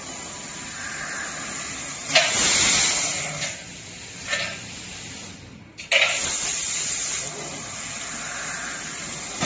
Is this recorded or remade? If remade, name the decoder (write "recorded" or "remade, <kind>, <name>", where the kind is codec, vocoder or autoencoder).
recorded